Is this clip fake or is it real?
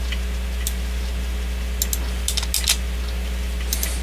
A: real